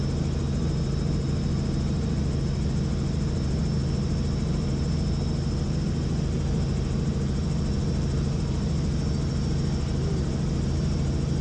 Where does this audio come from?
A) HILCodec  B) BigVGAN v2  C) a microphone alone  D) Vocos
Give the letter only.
C